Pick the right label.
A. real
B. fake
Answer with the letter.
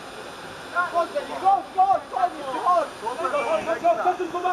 A